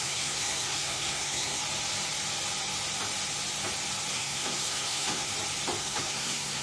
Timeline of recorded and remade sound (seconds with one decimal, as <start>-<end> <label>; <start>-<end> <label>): 0.0-1.6 remade; 1.6-4.1 recorded; 4.1-5.3 remade; 5.3-5.8 recorded; 5.8-6.6 remade